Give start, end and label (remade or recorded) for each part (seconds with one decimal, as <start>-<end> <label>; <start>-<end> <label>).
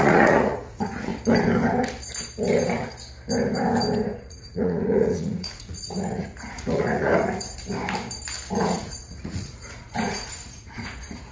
0.0-1.1 remade; 1.1-4.2 recorded; 4.2-7.1 remade; 7.1-8.5 recorded; 8.5-11.3 remade